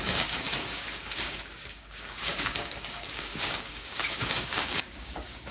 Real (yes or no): no